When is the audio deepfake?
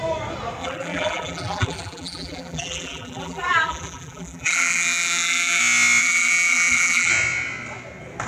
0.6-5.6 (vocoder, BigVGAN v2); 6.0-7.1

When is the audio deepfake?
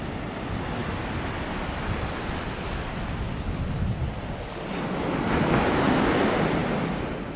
none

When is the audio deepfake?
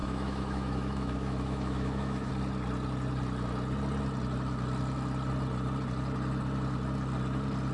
0.0-2.3 (autoencoder, DAC-VAE)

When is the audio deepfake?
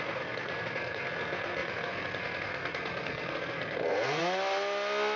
0.0-4.2 (codec, SNAC)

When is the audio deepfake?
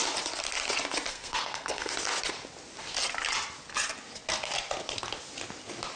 1.1-1.9 (codec, SNAC)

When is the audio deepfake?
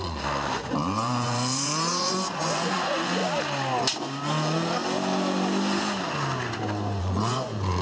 0.0-3.2 (vocoder, Vocos); 7.0-7.8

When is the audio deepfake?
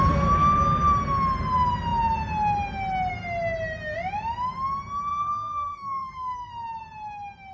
5.1-6.5 (codec, SNAC)